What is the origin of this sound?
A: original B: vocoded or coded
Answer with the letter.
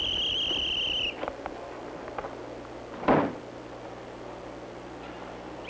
A